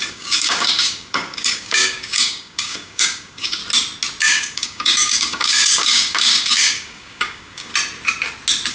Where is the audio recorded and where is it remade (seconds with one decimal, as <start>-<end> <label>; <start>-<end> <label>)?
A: 0.0-3.6 remade; 3.6-4.2 recorded; 4.2-7.7 remade; 7.7-8.7 recorded